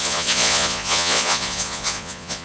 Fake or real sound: fake